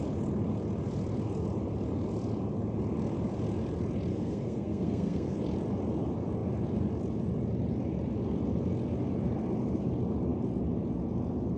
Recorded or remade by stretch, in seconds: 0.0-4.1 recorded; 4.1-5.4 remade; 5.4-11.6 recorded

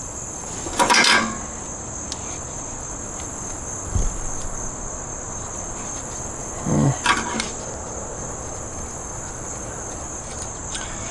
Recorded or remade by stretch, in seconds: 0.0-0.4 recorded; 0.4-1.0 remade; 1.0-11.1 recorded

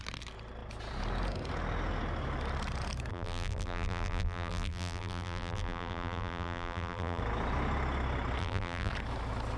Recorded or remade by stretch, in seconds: 0.0-3.1 recorded; 3.1-7.2 remade; 7.2-8.4 recorded; 8.4-8.9 remade; 8.9-9.6 recorded